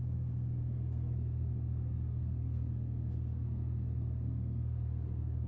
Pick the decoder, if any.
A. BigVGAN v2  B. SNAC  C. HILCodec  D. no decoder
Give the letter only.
B